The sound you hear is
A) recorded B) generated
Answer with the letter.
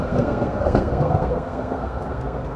B